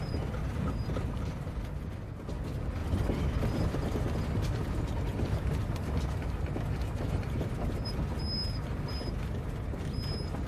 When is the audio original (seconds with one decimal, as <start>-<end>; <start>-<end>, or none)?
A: 0.0-0.4; 1.5-5.1; 5.9-10.5